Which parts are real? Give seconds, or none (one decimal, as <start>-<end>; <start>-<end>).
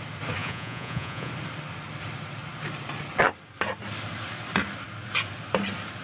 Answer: 0.0-0.4; 1.3-6.0